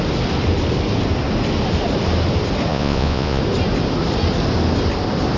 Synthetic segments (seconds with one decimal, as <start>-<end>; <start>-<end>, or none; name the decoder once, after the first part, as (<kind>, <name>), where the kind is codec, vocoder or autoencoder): 2.7-3.4 (vocoder, Vocos)